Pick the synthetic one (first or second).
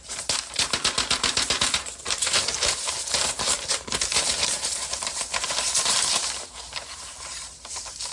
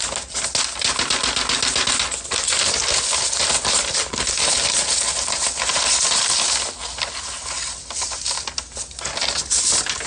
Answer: first